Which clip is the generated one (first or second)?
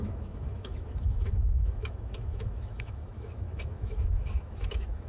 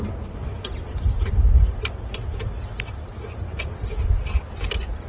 first